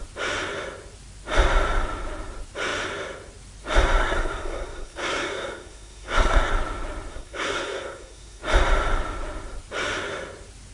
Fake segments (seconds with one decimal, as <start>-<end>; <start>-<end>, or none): 4.0-6.5; 7.1-8.4